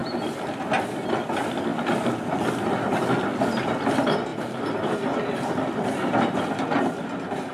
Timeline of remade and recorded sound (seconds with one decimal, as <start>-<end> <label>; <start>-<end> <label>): 0.0-7.5 recorded